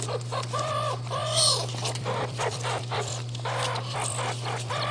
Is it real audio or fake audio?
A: fake